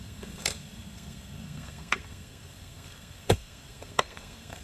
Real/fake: fake